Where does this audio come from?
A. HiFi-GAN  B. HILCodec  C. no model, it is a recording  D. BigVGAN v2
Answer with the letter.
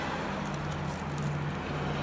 C